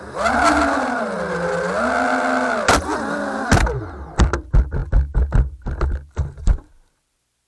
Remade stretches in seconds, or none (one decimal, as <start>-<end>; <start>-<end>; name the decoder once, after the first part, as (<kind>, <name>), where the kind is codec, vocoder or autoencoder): none